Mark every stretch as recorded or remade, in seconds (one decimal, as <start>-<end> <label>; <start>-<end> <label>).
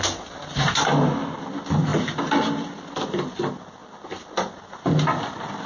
0.0-5.7 recorded